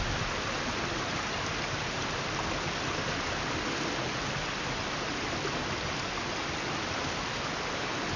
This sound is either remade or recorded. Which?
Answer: recorded